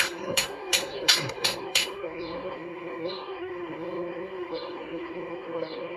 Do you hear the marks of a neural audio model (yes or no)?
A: yes